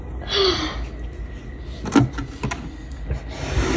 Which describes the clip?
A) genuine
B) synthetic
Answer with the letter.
A